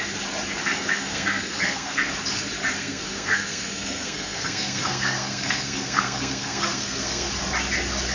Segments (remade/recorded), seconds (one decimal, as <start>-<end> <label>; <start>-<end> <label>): 0.0-0.6 recorded; 0.6-2.1 remade; 2.1-2.8 recorded; 2.8-7.3 remade; 7.3-8.1 recorded